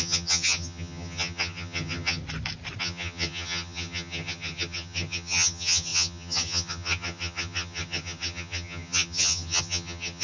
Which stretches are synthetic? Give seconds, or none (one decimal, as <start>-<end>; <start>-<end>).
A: 0.0-2.2; 2.8-10.2